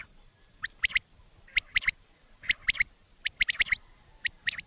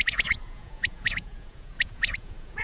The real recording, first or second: first